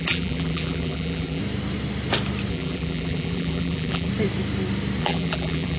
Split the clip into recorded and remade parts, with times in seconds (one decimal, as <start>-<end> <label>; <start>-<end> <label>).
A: 0.0-1.4 remade; 1.4-2.5 recorded; 2.5-4.1 remade; 4.1-5.0 recorded; 5.0-5.8 remade